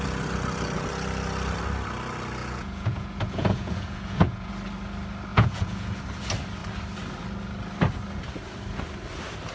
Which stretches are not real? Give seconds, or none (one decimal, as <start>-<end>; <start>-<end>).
2.4-4.5; 5.3-6.0